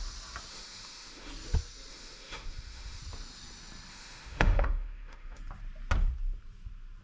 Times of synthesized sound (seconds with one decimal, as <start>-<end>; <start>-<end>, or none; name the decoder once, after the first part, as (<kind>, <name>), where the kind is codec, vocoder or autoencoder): 0.5-1.3 (autoencoder, DAC-VAE); 1.9-3.0; 3.9-5.4